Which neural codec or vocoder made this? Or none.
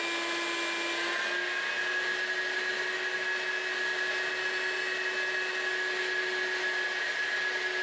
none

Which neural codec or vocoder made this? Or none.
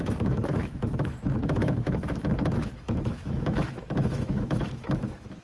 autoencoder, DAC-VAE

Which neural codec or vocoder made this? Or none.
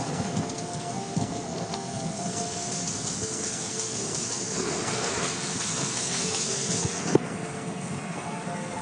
codec, SNAC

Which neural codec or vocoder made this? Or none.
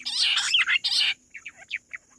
none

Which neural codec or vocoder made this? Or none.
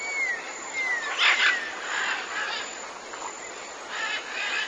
none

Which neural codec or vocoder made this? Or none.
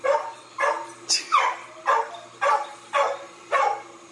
none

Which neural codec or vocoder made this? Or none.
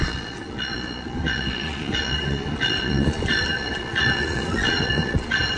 vocoder, Vocos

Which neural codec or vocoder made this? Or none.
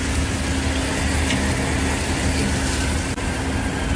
none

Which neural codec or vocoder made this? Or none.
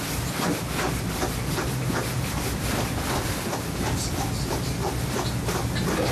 none